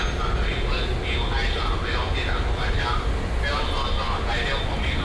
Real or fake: real